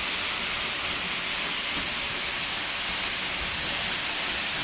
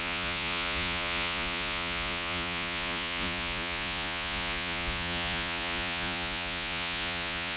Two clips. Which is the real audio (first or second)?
first